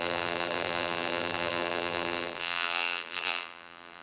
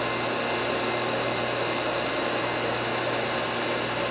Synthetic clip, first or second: first